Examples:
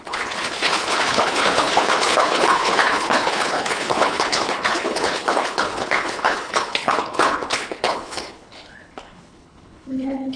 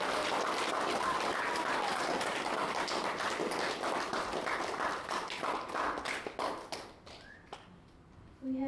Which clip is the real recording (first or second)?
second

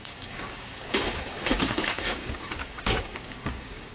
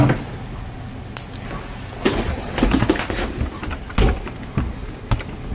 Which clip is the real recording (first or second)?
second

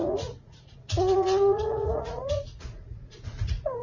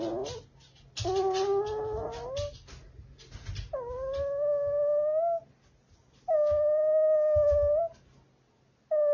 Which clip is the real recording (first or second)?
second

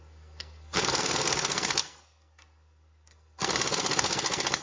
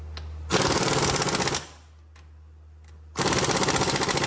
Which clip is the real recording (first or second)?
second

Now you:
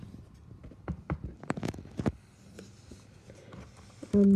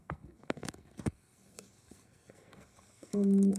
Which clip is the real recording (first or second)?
first